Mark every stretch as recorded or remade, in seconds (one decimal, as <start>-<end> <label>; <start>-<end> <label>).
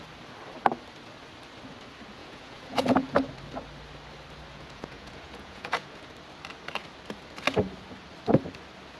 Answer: 0.0-2.2 recorded; 2.2-3.2 remade; 3.2-4.5 recorded; 4.5-6.1 remade; 6.1-9.0 recorded